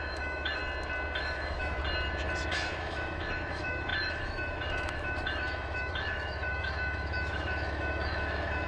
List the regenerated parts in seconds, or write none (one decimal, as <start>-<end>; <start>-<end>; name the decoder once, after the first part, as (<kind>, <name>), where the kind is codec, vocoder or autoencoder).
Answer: 0.0-0.6 (autoencoder, DAC-VAE); 1.2-1.8; 2.5-8.7